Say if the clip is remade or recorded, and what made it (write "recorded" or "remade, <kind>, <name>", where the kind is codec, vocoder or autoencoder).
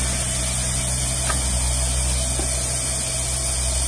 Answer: recorded